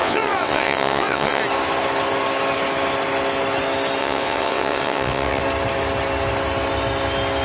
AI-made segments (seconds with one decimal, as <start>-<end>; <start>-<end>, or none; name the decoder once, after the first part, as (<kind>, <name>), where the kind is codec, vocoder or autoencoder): 0.0-1.4 (vocoder, WaveNeXt); 4.0-5.4